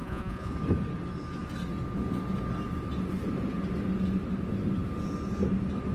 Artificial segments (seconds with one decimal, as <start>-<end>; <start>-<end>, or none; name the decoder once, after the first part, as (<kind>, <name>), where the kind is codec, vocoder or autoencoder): 0.0-0.5 (vocoder, Vocos)